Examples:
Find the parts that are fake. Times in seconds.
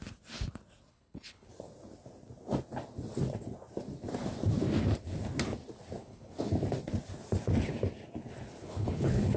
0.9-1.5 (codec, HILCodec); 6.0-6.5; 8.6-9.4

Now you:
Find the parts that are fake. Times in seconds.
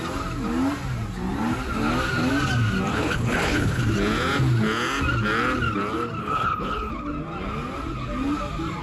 2.9-3.8 (codec, HILCodec); 6.2-6.9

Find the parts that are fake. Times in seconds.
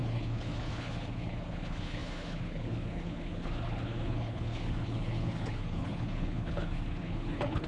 0.0-7.7 (codec, HILCodec)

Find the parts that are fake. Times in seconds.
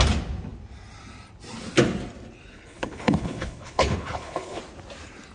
2.5-4.6 (codec, HILCodec)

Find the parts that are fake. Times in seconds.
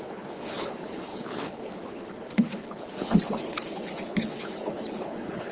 0.0-5.5 (codec, HILCodec)